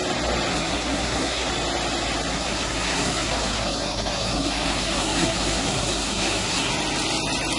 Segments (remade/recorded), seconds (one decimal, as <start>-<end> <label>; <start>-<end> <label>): 0.0-0.5 recorded; 0.5-1.5 remade; 1.5-2.3 recorded; 2.3-6.7 remade; 6.7-7.6 recorded